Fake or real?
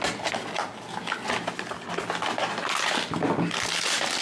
real